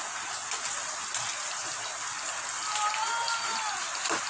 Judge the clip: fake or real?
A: real